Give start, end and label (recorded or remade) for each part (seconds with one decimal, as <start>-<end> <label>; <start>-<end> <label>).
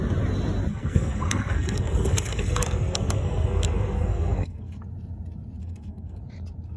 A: 0.0-0.7 recorded; 0.7-4.8 remade; 4.8-5.6 recorded; 5.6-6.2 remade; 6.2-6.8 recorded